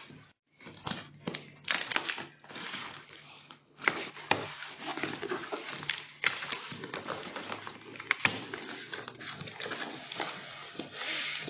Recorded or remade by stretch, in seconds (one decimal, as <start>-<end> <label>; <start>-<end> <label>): 0.0-2.8 recorded; 2.8-4.1 remade; 4.1-11.5 recorded